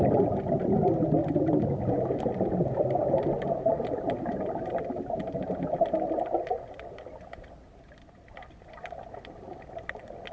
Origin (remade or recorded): recorded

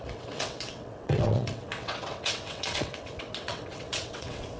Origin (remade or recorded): remade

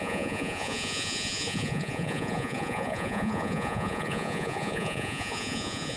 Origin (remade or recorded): remade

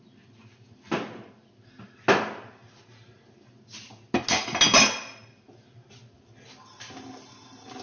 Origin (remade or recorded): recorded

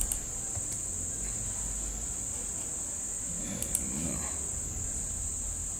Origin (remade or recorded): recorded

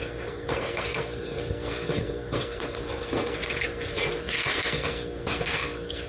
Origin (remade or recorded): remade